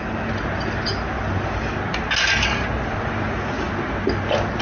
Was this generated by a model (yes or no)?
no